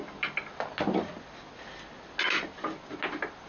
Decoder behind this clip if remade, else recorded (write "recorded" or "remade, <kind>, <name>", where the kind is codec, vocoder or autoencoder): recorded